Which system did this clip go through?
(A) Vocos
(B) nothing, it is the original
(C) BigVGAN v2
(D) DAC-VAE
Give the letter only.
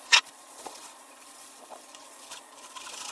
A